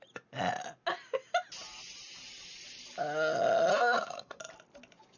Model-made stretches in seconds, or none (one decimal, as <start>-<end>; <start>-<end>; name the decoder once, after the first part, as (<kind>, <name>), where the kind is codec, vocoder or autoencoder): 3.7-4.4 (codec, SNAC)